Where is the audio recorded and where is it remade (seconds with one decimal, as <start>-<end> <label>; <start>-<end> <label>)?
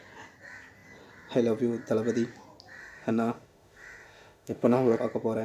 0.0-2.8 recorded; 2.8-5.0 remade; 5.0-5.4 recorded